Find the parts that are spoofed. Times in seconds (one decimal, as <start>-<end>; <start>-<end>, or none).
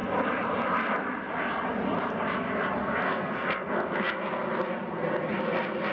2.8-4.2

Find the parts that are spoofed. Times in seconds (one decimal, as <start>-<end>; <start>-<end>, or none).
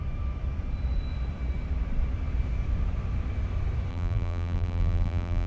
3.9-5.5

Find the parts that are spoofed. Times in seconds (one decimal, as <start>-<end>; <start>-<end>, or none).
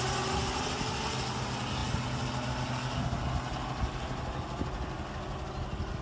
none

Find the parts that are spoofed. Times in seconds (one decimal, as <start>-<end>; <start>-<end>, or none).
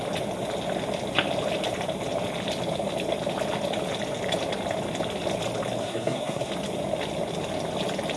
5.8-6.5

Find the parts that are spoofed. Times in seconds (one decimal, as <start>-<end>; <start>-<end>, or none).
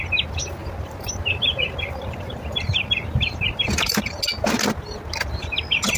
0.6-4.2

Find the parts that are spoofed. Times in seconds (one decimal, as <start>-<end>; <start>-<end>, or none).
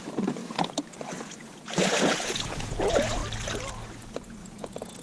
0.0-0.4; 1.3-3.2; 3.8-5.0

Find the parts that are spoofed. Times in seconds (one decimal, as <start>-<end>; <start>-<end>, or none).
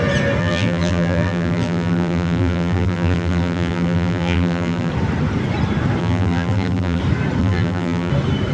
0.4-4.9; 6.0-7.0; 7.4-8.1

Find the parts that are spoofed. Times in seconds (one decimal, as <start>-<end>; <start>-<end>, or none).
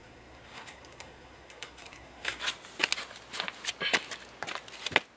0.0-2.4